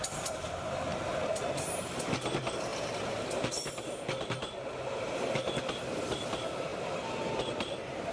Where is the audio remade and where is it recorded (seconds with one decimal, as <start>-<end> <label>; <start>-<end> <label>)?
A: 0.0-8.1 recorded